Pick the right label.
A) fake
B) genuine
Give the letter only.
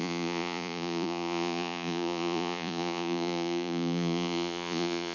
A